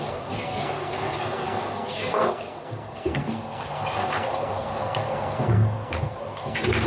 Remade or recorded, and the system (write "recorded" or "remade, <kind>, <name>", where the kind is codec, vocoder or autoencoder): remade, codec, SNAC